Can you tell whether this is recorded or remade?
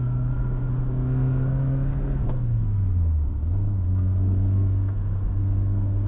remade